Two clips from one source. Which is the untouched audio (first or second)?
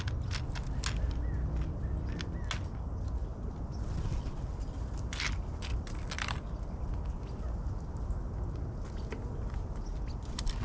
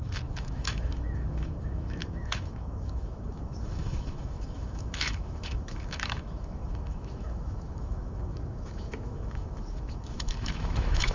first